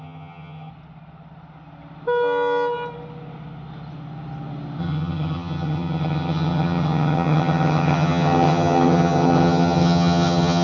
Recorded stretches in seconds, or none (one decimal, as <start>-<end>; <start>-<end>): 0.7-4.8